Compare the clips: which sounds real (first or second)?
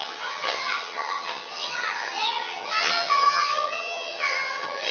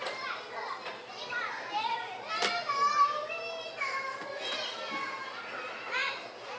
second